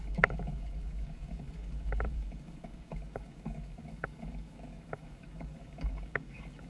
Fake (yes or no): yes